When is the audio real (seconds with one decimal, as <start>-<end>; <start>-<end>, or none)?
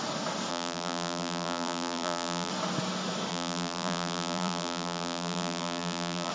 0.0-0.5; 2.5-3.3